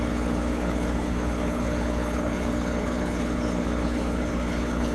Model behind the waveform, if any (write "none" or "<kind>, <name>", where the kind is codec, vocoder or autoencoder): codec, HILCodec